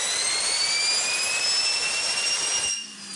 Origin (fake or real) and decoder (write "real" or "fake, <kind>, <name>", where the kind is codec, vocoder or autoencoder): real